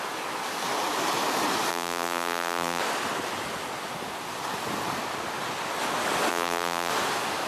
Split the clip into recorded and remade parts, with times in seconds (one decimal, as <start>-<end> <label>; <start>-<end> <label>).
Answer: 0.0-1.7 recorded; 1.7-2.8 remade; 2.8-6.3 recorded; 6.3-6.9 remade; 6.9-7.5 recorded